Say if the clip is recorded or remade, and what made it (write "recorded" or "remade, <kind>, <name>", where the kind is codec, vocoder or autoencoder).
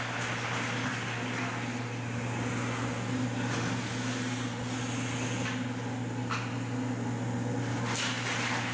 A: recorded